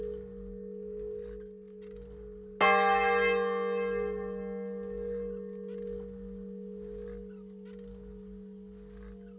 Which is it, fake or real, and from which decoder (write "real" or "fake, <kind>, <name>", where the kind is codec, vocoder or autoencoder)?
real